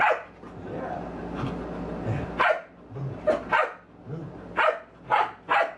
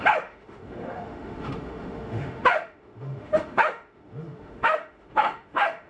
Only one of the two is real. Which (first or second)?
first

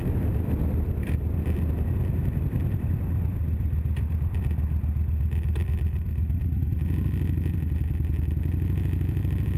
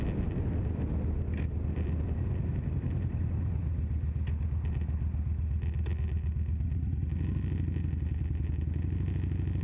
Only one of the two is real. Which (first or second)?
second